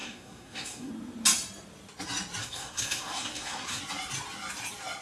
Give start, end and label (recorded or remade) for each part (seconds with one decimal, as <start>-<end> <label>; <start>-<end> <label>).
0.0-0.9 remade; 0.9-2.4 recorded; 2.4-3.8 remade; 3.8-5.0 recorded